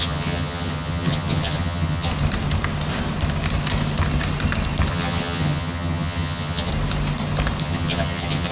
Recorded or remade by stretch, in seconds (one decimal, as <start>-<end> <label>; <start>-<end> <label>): 0.0-2.1 remade; 2.1-4.9 recorded; 4.9-6.7 remade; 6.7-7.6 recorded; 7.6-8.5 remade